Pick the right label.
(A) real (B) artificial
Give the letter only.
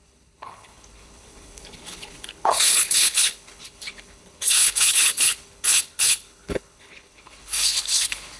B